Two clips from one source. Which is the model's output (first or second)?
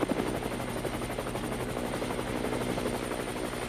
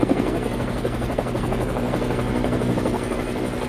second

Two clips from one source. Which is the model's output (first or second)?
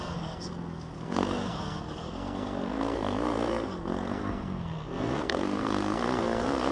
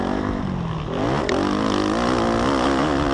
first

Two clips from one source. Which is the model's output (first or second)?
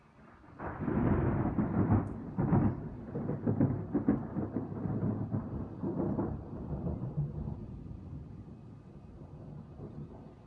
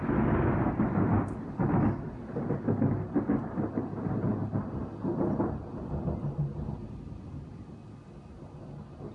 first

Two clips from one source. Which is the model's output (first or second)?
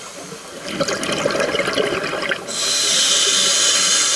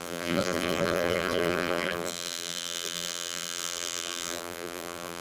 second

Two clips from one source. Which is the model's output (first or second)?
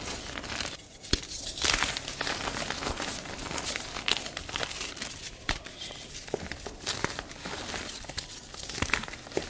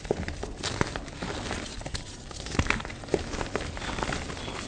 first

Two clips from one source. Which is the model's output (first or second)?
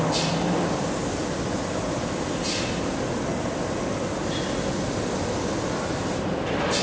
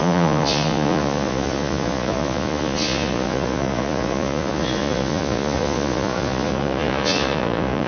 second